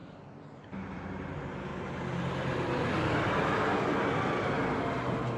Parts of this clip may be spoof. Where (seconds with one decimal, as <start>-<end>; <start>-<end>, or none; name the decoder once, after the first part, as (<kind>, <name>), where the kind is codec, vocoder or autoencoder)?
none